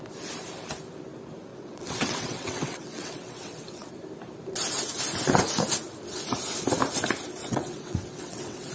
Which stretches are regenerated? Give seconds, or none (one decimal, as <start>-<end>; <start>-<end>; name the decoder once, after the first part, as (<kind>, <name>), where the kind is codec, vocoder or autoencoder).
1.5-3.9 (vocoder, WaveNeXt); 7.4-8.7